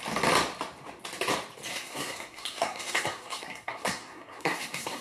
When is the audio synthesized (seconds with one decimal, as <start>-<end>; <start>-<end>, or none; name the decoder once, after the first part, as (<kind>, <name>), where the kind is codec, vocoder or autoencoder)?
1.7-5.0 (codec, SNAC)